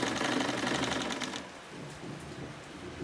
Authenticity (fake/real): real